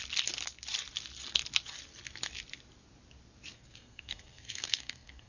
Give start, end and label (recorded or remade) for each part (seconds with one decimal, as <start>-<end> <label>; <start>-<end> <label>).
0.0-3.5 recorded; 3.5-5.3 remade